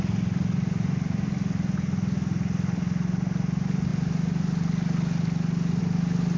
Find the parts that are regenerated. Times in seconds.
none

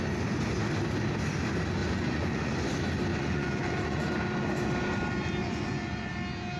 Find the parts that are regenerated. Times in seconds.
1.8-2.5 (vocoder, Vocos); 3.1-4.1; 5.4-6.1

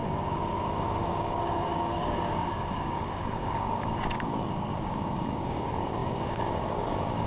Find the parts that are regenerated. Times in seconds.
0.0-7.3 (codec, DAC)

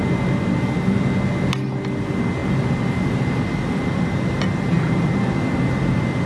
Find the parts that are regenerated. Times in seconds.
2.4-6.3 (vocoder, BigVGAN v2)

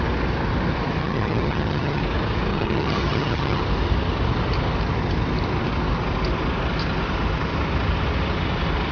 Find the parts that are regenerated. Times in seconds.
1.0-2.0 (vocoder, HiFi-GAN); 2.5-3.6